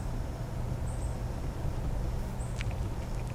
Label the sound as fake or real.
real